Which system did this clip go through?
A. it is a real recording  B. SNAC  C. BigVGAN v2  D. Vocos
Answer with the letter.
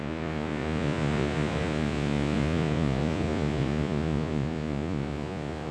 D